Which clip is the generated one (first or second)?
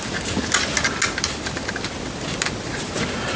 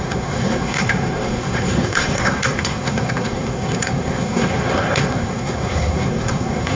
second